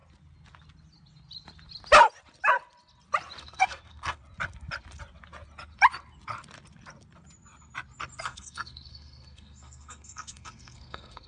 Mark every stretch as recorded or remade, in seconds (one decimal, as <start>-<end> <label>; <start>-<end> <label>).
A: 0.0-3.4 recorded; 3.4-4.2 remade; 4.2-8.2 recorded; 8.2-11.3 remade